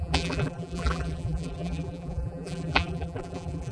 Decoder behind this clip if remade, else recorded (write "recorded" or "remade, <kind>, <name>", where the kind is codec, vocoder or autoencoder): remade, vocoder, BigVGAN v2